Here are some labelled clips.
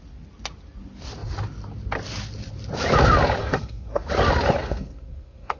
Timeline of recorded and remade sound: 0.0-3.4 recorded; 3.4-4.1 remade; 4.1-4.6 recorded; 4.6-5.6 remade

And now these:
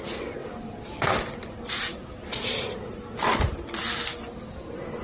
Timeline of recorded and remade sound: 0.0-5.0 recorded

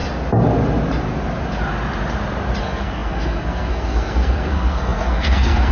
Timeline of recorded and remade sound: 0.0-2.6 recorded; 2.6-5.7 remade

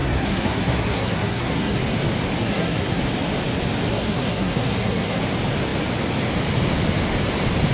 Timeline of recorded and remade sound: 0.0-1.8 remade; 1.8-2.4 recorded; 2.4-3.0 remade; 3.0-3.9 recorded; 3.9-5.2 remade; 5.2-7.7 recorded

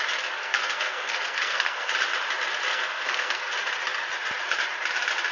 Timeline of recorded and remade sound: 0.0-0.4 recorded; 0.4-1.9 remade; 1.9-2.7 recorded; 2.7-3.5 remade; 3.5-5.3 recorded

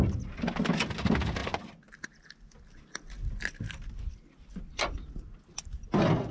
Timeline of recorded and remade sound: 0.0-6.3 recorded

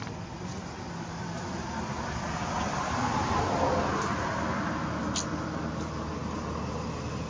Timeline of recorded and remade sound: 0.0-7.3 recorded

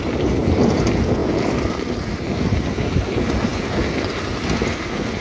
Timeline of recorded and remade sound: 0.0-5.2 recorded